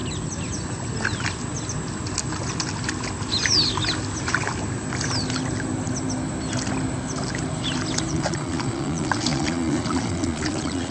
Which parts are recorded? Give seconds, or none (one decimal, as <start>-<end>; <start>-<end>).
0.0-8.1